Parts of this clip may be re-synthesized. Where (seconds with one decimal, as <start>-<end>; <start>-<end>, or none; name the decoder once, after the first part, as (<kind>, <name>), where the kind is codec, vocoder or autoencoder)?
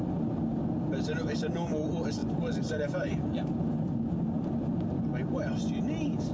2.2-4.5 (vocoder, BigVGAN v2)